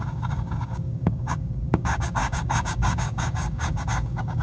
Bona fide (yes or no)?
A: no